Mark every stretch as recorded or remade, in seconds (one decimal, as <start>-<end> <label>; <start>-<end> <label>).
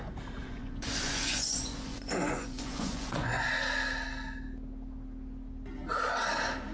0.0-0.4 recorded; 0.4-3.5 remade; 3.5-6.7 recorded